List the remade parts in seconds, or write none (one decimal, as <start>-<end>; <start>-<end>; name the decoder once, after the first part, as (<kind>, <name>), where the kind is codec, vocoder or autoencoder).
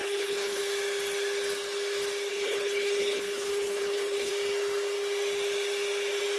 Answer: 0.0-0.6 (codec, HILCodec); 2.3-4.3